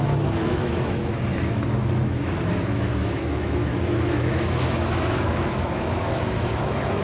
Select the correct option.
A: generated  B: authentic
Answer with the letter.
A